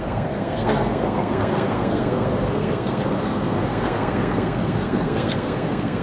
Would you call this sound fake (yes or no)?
yes